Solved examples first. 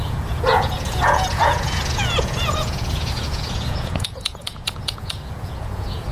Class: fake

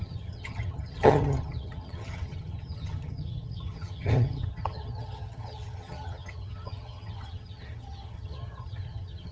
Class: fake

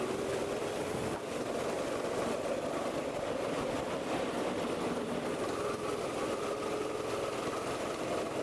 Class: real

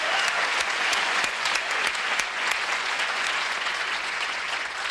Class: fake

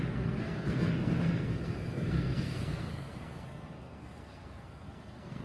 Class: fake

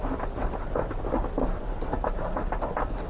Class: real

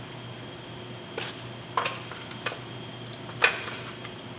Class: real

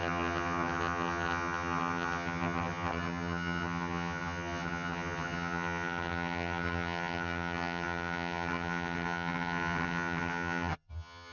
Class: fake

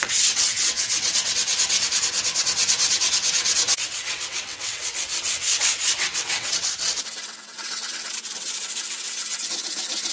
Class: fake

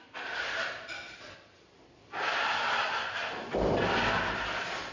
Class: fake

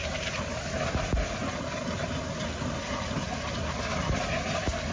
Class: real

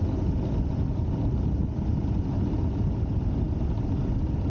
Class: real